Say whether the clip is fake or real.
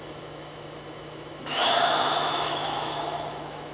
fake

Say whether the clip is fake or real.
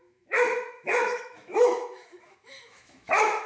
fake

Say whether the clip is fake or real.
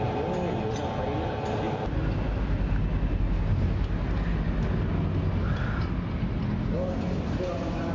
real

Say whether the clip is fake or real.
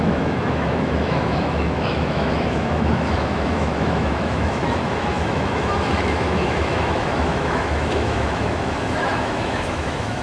fake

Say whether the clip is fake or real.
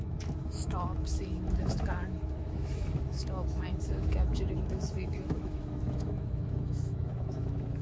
fake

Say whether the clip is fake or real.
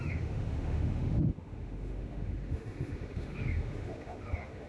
fake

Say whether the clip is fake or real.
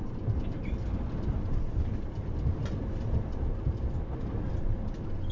real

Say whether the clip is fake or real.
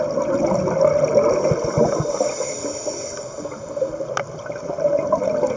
real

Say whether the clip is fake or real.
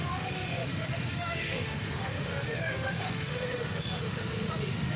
fake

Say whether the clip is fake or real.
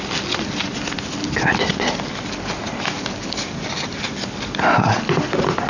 real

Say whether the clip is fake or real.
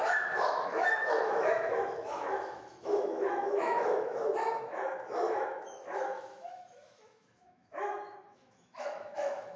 fake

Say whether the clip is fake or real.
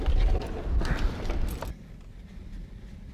real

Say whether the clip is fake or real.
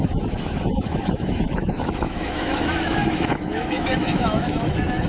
fake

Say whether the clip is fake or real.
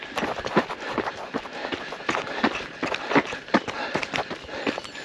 real